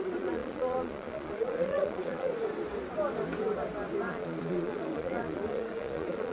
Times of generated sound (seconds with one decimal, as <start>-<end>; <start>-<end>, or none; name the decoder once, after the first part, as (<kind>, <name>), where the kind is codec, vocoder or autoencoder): 0.0-2.3 (vocoder, Vocos); 4.1-6.3